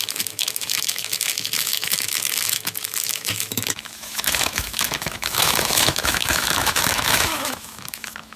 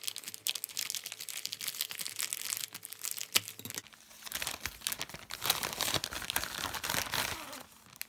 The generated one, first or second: first